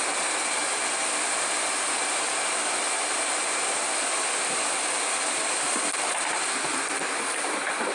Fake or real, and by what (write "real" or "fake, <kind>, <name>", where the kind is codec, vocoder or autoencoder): real